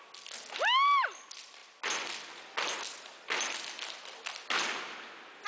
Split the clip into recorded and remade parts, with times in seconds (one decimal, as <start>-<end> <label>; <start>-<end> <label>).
0.0-5.5 recorded